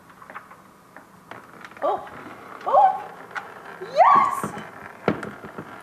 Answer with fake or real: real